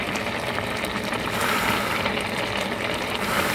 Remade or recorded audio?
remade